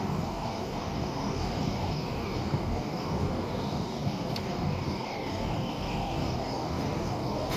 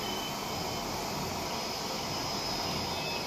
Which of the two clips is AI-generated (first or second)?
first